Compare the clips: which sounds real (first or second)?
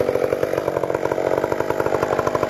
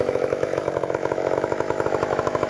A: first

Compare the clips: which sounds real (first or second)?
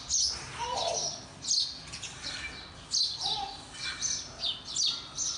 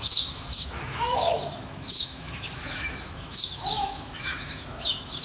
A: first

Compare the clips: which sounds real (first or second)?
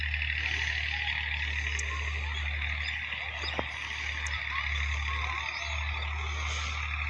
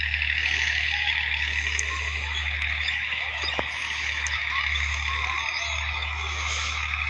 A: first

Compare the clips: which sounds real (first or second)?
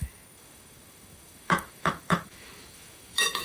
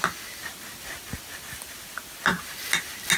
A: second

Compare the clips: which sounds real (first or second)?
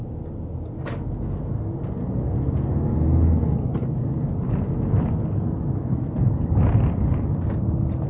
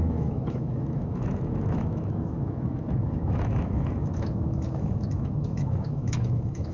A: first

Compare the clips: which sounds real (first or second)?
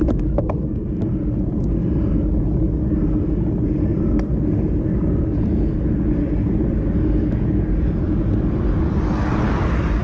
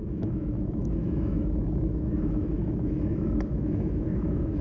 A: first